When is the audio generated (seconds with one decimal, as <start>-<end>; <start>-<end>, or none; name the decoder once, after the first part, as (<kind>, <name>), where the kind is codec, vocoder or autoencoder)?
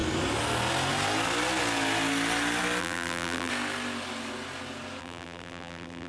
2.8-3.5 (vocoder, BigVGAN v2); 5.0-6.1